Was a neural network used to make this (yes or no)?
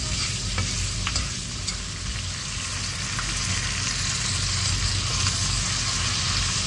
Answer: no